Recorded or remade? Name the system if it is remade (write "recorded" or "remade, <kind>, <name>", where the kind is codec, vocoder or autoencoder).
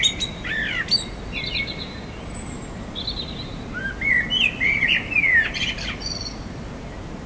recorded